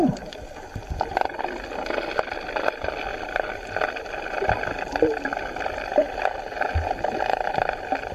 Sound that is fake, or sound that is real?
real